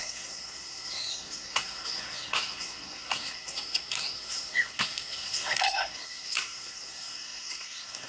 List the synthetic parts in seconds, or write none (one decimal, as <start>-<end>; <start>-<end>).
0.0-8.1

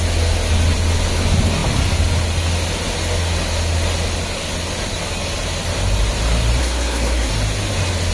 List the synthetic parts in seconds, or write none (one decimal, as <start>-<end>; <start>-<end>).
6.6-7.3